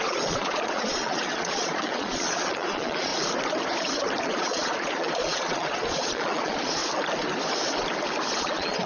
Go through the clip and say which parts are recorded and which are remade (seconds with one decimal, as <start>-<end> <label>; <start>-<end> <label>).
0.0-3.1 remade; 3.1-4.2 recorded; 4.2-6.8 remade; 6.8-8.4 recorded; 8.4-8.9 remade